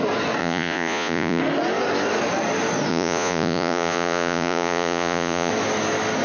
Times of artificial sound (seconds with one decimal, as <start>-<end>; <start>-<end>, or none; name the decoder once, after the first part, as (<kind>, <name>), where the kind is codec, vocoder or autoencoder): 0.4-1.4 (vocoder, Vocos); 2.9-5.5